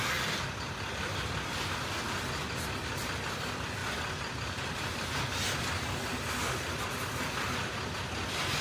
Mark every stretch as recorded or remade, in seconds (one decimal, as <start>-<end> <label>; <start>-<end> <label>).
0.0-8.6 recorded